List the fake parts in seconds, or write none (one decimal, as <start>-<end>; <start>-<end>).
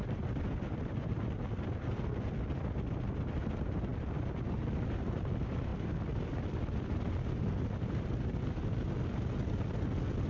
none